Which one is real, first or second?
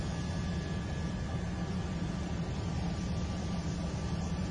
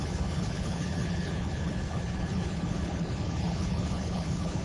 first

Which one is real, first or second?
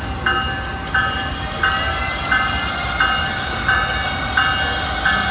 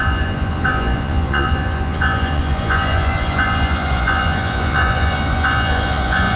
first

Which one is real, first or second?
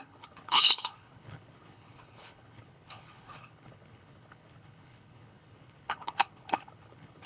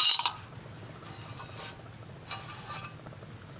second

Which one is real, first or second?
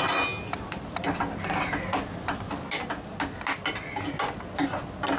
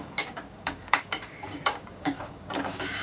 first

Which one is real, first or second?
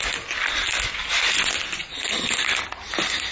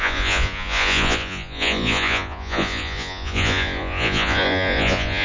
first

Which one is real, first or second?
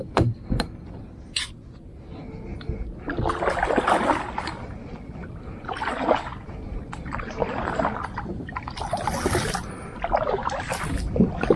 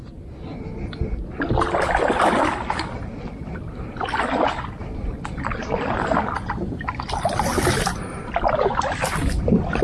first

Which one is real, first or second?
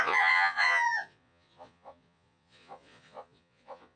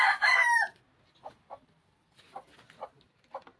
second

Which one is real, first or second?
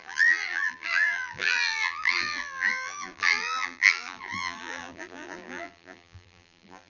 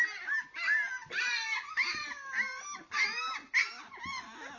second